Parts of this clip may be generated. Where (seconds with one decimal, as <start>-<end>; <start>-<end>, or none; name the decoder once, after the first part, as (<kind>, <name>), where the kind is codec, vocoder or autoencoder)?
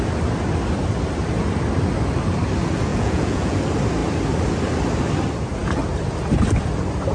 2.9-3.6 (vocoder, Vocos)